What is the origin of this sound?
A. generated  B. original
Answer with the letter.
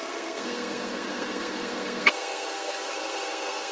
A